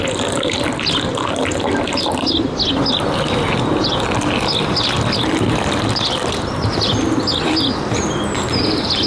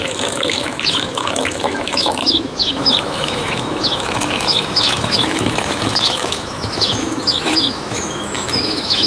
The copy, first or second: second